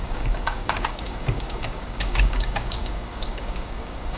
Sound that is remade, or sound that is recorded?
remade